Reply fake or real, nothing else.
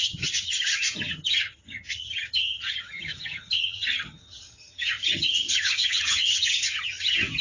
fake